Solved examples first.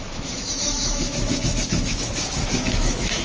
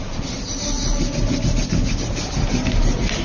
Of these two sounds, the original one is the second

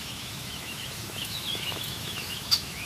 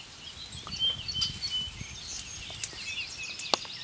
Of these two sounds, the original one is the second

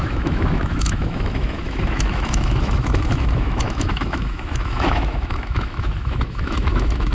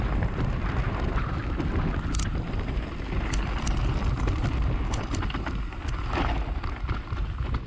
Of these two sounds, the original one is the second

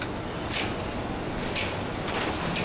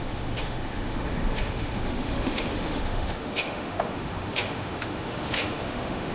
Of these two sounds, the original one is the first